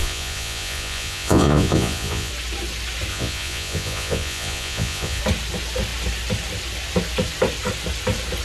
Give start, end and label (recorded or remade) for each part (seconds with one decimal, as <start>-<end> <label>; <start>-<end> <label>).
0.0-2.3 remade; 2.3-3.1 recorded; 3.1-5.2 remade; 5.2-8.4 recorded